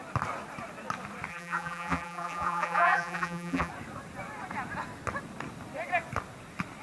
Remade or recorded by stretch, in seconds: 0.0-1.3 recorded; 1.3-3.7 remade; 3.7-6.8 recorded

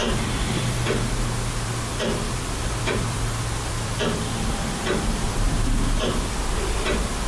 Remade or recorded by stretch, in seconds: 0.0-1.0 remade; 1.0-1.9 recorded; 1.9-6.3 remade; 6.3-7.3 recorded

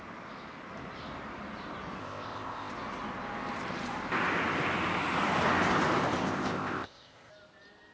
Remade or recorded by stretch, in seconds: 0.0-2.0 recorded; 2.0-2.7 remade; 2.7-6.2 recorded; 6.2-7.3 remade; 7.3-7.9 recorded